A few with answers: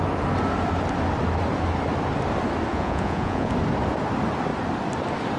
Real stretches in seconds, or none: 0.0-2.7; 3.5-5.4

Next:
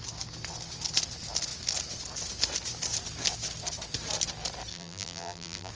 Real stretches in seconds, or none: 0.0-4.7